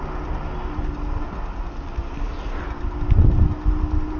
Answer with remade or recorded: recorded